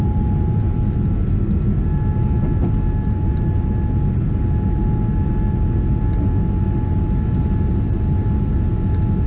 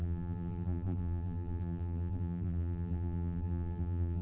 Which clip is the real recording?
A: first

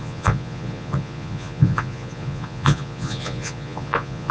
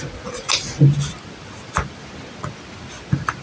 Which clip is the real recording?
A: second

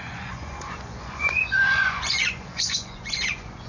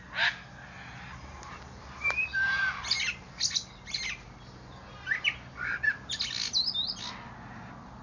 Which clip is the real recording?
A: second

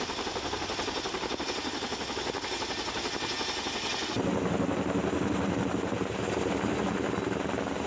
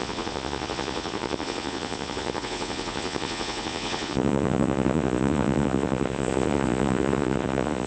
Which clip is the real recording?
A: first